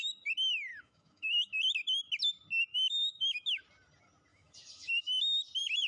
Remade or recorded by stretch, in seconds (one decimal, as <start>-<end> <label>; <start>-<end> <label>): 0.0-0.7 recorded; 0.7-1.5 remade; 1.5-2.7 recorded; 2.7-3.6 remade; 3.6-4.3 recorded; 4.3-5.2 remade; 5.2-5.9 recorded